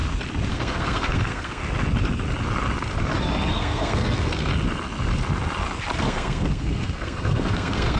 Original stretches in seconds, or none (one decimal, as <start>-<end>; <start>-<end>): 0.0-0.5; 1.6-3.5; 4.5-6.0